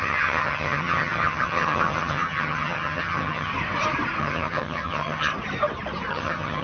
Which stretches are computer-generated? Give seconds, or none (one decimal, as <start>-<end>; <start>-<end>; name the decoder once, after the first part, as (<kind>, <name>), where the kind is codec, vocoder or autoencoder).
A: 0.0-3.5 (vocoder, HiFi-GAN); 4.2-5.3; 6.1-6.6